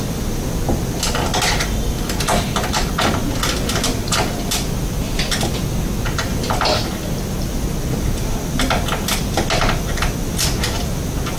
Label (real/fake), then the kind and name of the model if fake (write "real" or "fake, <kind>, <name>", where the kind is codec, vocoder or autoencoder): real